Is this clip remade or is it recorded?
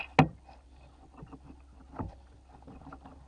recorded